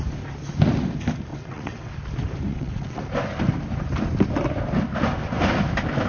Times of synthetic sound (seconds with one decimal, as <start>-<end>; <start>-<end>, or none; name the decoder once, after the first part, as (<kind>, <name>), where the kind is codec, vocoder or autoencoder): 1.3-1.9 (vocoder, WaveNeXt); 2.5-3.0